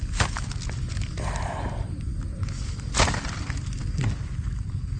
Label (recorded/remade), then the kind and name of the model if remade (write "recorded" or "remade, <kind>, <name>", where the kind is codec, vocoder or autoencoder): recorded